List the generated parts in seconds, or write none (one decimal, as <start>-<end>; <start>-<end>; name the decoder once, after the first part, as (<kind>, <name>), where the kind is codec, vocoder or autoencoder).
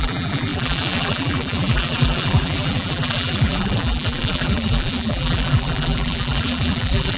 0.0-7.2 (vocoder, BigVGAN v2)